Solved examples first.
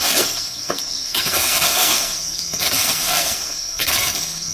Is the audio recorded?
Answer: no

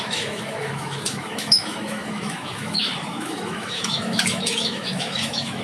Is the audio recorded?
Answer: no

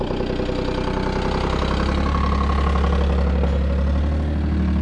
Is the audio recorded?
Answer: yes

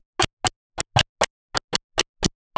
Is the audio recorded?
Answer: yes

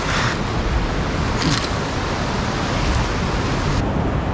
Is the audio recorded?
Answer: yes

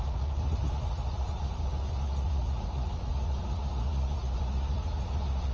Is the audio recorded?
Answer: no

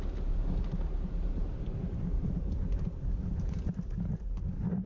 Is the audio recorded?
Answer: yes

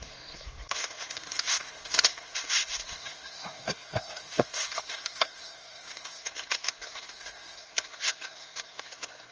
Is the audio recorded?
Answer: no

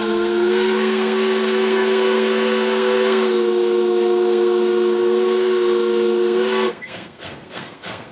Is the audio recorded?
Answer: no